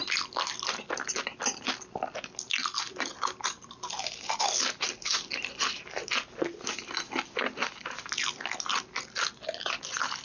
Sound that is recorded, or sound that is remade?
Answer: recorded